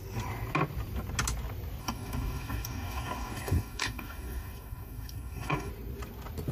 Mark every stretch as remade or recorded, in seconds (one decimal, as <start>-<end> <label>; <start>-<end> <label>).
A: 0.0-1.8 recorded; 1.8-5.7 remade; 5.7-6.5 recorded